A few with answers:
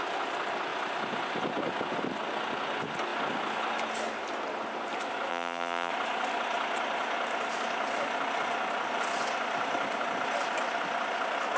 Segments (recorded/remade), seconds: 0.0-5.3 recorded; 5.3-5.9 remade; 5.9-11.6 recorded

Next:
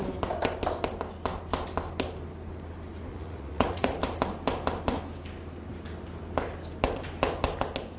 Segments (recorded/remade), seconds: 0.0-3.1 recorded; 3.1-4.0 remade; 4.0-8.0 recorded

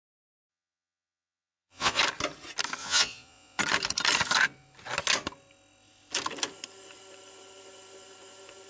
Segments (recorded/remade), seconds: 0.0-0.5 recorded; 0.5-2.0 remade; 2.0-2.8 recorded; 2.8-3.6 remade; 3.6-8.7 recorded